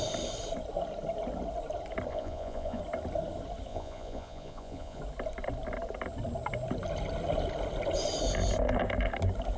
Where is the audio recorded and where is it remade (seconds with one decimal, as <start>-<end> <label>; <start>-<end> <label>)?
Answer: 0.0-2.1 recorded; 2.1-2.8 remade; 2.8-3.7 recorded; 3.7-5.0 remade; 5.0-9.6 recorded